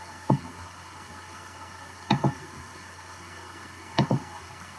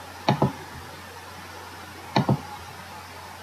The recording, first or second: second